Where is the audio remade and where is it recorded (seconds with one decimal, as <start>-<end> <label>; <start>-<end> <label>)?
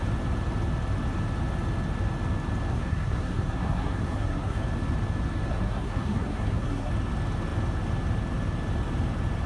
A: 0.0-2.7 recorded; 2.7-4.6 remade; 4.6-5.5 recorded; 5.5-6.9 remade; 6.9-9.5 recorded